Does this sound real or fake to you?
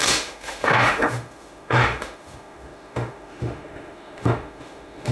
fake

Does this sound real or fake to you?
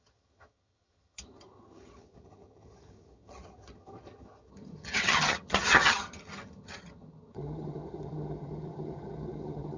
fake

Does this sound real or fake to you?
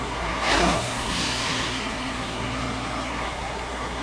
fake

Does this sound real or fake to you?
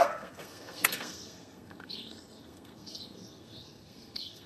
fake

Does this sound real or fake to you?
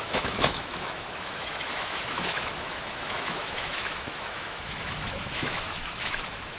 fake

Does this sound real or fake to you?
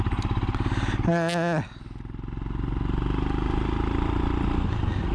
real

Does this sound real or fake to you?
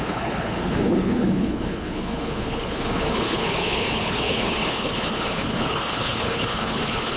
fake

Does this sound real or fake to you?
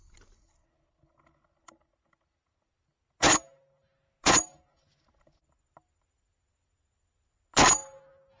real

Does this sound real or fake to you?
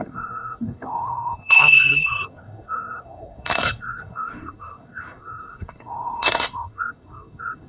fake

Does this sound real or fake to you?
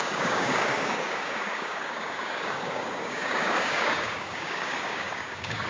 fake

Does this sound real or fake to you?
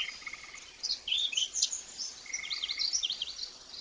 real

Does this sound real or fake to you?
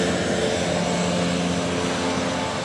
real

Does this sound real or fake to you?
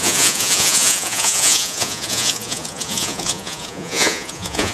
fake